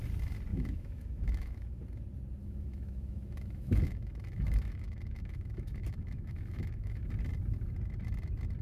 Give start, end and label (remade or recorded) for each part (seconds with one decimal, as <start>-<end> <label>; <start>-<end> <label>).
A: 0.0-0.5 recorded; 0.5-1.8 remade; 1.8-2.4 recorded; 2.4-7.1 remade; 7.1-8.6 recorded